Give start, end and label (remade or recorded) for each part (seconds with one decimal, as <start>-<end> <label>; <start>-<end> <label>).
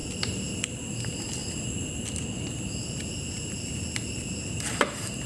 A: 0.0-5.3 recorded